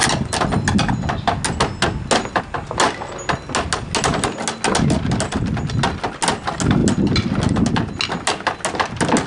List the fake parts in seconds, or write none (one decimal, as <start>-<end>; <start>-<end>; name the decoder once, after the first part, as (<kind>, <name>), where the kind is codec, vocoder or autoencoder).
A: none